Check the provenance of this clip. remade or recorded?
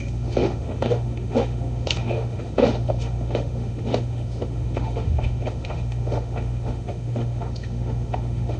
remade